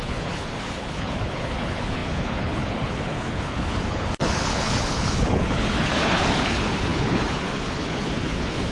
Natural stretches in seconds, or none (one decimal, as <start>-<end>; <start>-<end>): none